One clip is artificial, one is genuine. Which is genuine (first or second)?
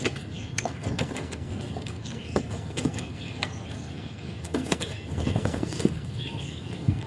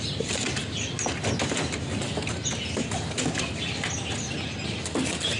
second